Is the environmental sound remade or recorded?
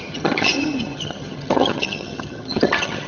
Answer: remade